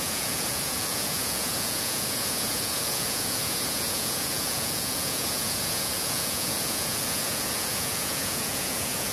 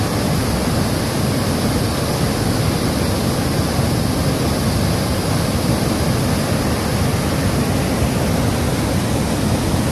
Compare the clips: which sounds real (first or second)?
second